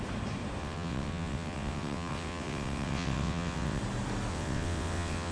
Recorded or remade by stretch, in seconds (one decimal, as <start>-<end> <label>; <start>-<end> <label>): 0.0-0.6 recorded; 0.6-3.8 remade; 3.8-4.3 recorded; 4.3-5.3 remade